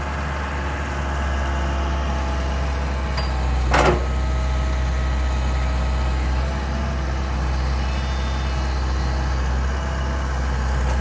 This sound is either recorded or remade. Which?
recorded